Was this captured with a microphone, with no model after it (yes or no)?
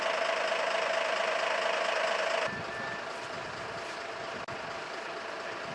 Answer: yes